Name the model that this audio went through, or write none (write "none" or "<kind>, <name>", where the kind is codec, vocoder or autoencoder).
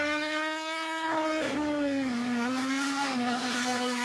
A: codec, SNAC